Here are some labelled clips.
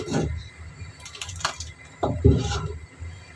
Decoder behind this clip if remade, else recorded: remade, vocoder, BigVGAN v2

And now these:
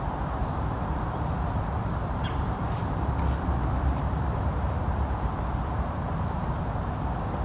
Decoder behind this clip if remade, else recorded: remade, vocoder, BigVGAN v2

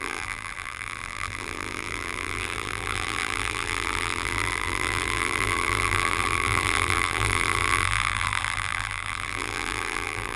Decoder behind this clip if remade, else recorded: remade, vocoder, BigVGAN v2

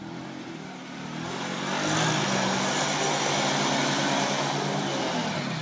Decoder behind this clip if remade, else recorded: recorded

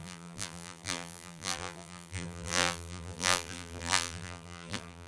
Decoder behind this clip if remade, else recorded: remade, vocoder, BigVGAN v2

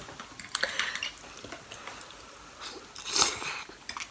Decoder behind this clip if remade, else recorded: recorded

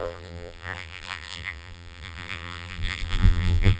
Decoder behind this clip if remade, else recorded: remade, vocoder, BigVGAN v2